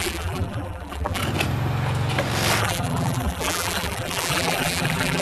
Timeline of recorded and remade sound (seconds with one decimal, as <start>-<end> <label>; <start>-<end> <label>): 0.0-1.2 remade; 1.2-2.6 recorded; 2.6-5.2 remade